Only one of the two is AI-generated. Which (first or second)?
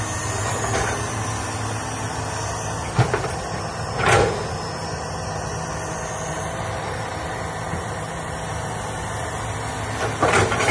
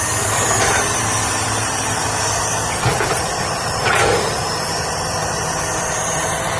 second